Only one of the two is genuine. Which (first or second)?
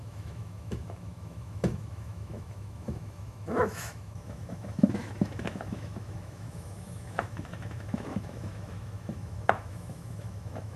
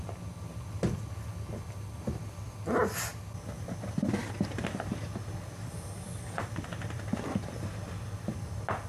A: second